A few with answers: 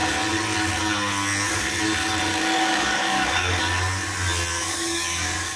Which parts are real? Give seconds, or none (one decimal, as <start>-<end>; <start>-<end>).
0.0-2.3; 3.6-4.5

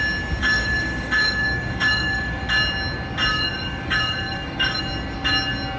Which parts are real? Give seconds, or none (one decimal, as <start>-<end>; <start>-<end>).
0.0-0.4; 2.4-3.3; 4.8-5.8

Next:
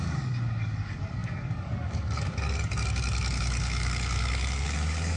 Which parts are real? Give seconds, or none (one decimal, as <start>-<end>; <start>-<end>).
none